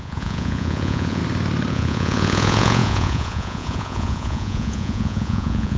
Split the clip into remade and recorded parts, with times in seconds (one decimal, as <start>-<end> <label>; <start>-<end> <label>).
0.0-1.2 remade; 1.2-1.7 recorded; 1.7-5.8 remade